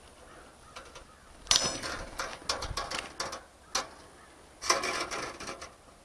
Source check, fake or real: real